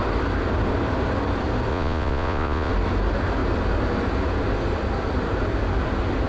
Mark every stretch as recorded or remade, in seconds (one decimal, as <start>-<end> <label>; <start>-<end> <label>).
0.0-1.7 recorded; 1.7-2.7 remade; 2.7-6.3 recorded